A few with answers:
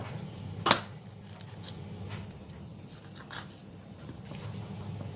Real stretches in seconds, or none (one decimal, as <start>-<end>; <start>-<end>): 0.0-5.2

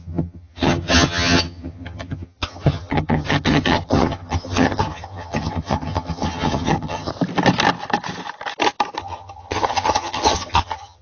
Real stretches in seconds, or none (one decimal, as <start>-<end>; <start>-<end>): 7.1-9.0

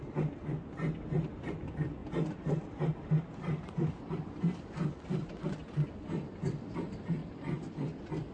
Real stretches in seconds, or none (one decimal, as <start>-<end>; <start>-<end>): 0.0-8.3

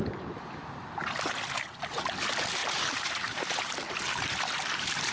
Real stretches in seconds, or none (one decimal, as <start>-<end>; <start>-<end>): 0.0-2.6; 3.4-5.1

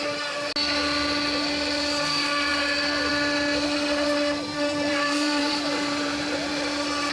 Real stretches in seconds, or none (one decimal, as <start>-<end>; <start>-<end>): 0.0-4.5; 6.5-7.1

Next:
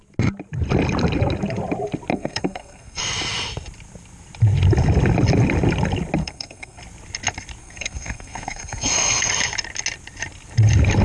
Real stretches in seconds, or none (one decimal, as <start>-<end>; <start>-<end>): 0.0-2.1; 3.0-6.2; 6.8-7.6; 9.3-11.0